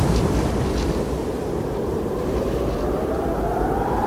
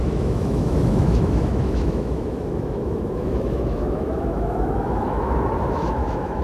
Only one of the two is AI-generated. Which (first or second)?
second